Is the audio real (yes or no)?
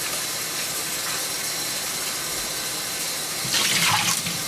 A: yes